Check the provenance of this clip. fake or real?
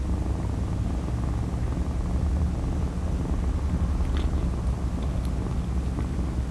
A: real